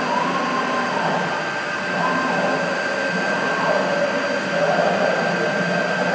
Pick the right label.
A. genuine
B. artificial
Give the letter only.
A